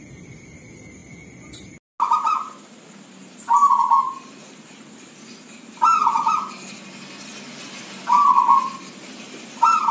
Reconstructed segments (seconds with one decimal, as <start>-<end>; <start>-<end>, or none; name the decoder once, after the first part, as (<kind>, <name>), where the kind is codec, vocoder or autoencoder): none